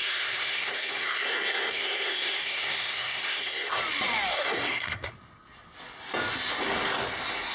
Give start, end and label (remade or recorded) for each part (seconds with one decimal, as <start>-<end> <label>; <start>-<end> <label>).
0.0-3.8 remade; 3.8-4.3 recorded; 4.3-5.1 remade; 5.1-7.5 recorded